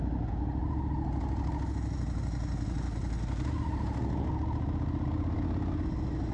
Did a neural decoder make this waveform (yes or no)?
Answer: no